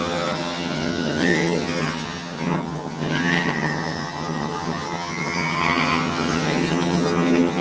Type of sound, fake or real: fake